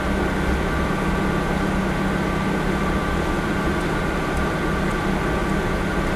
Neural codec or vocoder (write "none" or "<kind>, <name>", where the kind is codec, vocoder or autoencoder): none